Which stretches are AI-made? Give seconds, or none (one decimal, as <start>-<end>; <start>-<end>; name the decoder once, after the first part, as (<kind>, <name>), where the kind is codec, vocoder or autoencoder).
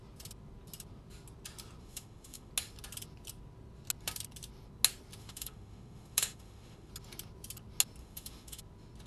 1.8-2.5 (autoencoder, DAC-VAE); 5.2-6.9; 8.0-8.6